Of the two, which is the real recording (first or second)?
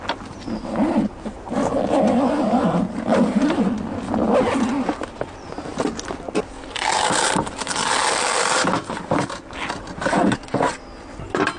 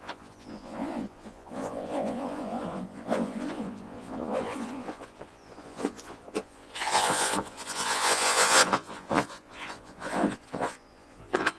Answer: first